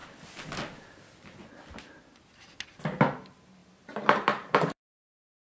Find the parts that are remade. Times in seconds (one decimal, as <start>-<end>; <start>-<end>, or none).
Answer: 3.6-5.5